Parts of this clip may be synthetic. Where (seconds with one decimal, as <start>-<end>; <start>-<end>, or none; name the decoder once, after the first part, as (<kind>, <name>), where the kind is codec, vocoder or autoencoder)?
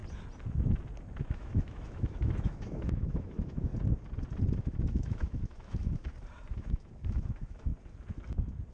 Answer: 1.2-3.7 (autoencoder, DAC-VAE); 4.6-6.0; 6.5-7.7